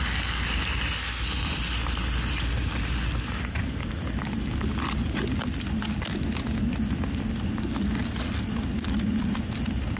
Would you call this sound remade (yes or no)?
no